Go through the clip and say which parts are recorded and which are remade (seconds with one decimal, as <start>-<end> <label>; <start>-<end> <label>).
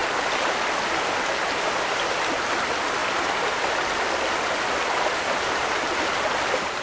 0.0-6.8 recorded